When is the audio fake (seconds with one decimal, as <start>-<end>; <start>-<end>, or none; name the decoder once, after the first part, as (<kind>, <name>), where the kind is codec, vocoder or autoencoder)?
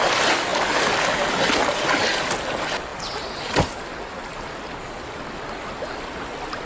none